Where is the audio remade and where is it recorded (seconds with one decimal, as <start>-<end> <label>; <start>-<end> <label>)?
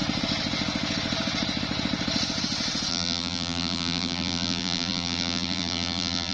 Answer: 0.0-2.9 recorded; 2.9-6.3 remade